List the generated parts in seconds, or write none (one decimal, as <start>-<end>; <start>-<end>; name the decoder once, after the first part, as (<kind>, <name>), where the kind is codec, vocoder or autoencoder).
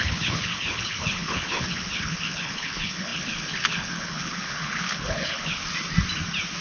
0.0-5.6 (codec, HILCodec)